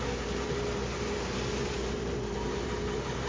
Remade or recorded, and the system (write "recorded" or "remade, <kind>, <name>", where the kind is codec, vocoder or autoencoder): remade, vocoder, BigVGAN v2